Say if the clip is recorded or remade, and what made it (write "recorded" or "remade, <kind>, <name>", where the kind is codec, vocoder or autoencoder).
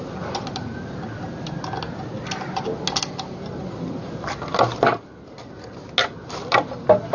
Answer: recorded